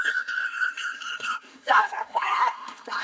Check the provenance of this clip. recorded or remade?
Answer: remade